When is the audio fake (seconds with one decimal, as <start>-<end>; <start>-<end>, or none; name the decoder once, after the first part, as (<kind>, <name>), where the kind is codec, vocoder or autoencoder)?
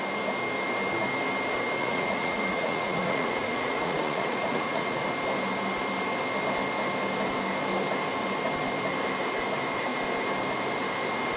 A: 1.8-5.0 (vocoder, Vocos)